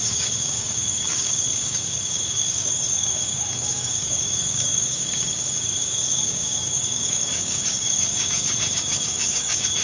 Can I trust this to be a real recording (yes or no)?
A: no